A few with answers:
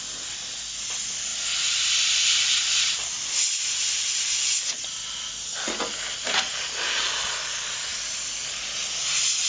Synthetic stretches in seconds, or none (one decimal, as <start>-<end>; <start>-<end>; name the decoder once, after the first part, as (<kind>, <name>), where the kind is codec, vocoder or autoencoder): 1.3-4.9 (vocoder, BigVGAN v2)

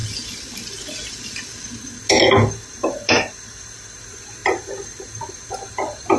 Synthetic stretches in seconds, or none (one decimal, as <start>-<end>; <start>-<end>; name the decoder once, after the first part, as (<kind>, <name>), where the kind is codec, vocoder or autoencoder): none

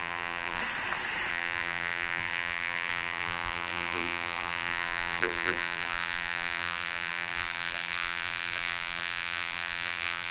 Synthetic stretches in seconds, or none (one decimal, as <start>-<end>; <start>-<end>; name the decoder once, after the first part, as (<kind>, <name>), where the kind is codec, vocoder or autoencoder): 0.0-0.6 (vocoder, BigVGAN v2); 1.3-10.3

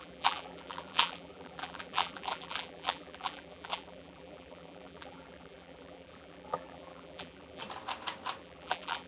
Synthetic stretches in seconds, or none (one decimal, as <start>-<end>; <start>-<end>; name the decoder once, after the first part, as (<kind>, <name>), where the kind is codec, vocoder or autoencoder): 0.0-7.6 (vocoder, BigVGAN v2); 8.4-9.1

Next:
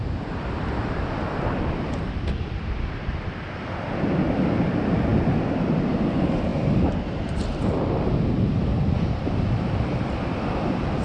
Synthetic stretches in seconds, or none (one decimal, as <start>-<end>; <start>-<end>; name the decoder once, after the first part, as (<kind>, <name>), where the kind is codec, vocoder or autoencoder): 0.0-6.5 (vocoder, BigVGAN v2); 9.6-11.0

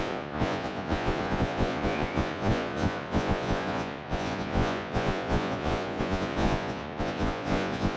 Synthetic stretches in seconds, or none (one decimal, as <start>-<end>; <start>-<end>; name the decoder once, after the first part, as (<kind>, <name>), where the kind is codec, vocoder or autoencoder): 0.0-8.0 (vocoder, Vocos)

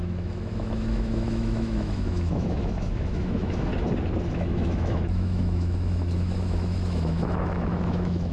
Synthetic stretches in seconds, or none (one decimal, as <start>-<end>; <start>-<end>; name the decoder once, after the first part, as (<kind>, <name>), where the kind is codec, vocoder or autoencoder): 0.0-3.7 (autoencoder, DAC-VAE); 4.3-8.3

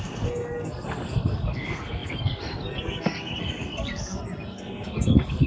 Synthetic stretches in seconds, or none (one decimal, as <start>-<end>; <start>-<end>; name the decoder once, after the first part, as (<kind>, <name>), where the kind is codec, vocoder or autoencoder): 0.0-5.5 (codec, SNAC)